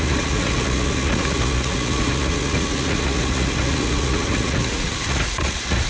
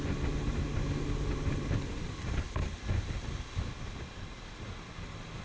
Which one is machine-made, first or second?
first